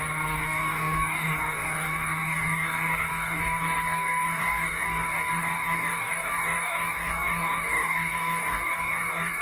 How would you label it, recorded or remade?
remade